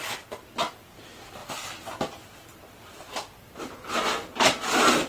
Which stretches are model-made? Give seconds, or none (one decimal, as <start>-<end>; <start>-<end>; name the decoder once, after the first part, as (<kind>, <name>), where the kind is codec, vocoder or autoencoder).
none